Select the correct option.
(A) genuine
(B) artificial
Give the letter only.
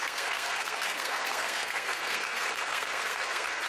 B